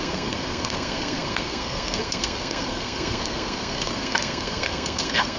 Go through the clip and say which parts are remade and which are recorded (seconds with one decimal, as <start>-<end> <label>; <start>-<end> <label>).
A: 0.0-5.4 remade